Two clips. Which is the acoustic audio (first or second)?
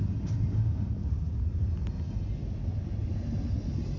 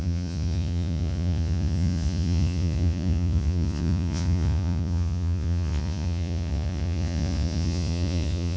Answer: first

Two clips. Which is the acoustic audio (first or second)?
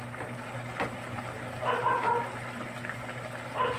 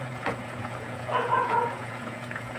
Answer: first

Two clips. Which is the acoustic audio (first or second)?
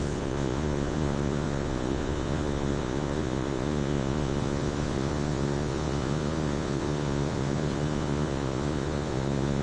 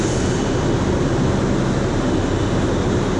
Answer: second